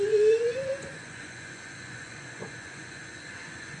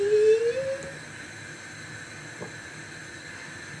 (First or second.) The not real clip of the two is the first